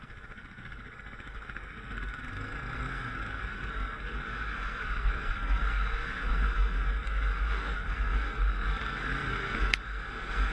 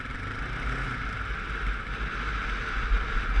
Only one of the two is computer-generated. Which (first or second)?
first